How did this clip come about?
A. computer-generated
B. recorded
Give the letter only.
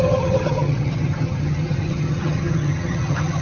A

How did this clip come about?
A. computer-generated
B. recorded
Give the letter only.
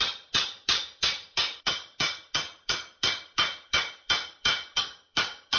A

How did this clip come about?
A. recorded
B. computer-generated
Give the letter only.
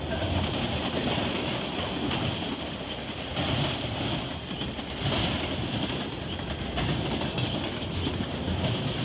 A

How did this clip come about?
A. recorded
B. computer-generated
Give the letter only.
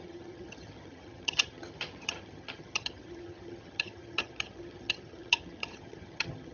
B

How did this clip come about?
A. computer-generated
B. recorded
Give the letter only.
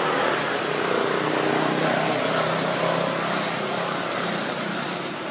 B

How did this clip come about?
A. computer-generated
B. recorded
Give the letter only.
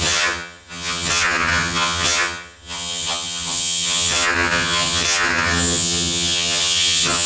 A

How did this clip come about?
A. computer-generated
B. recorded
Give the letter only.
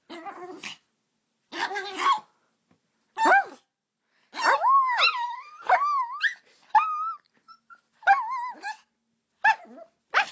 B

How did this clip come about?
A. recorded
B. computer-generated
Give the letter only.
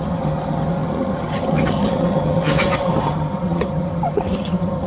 B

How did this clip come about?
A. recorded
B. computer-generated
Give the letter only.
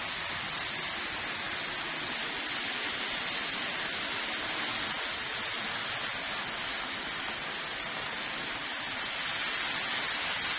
A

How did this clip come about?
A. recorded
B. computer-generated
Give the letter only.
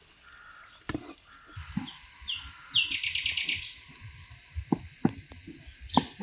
A